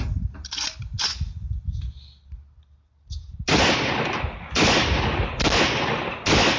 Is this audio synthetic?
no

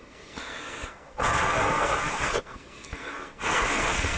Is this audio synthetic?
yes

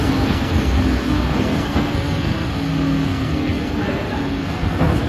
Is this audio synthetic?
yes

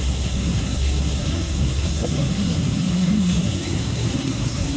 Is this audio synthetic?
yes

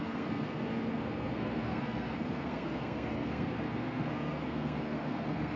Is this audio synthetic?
yes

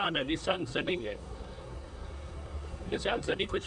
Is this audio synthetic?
yes